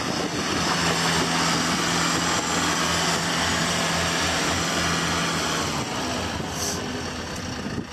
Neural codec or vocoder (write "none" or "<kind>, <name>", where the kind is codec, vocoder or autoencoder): none